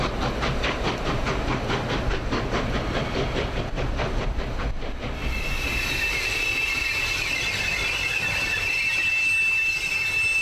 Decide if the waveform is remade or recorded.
recorded